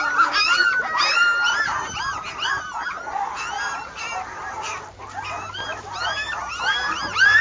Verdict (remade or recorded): recorded